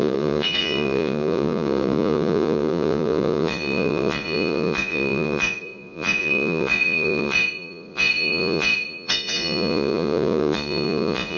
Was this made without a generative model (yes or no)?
no